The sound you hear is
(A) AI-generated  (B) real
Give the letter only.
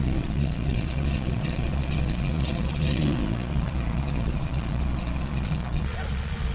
A